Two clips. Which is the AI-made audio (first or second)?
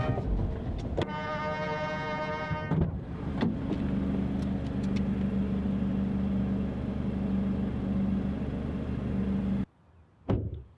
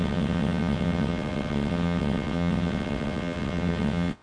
second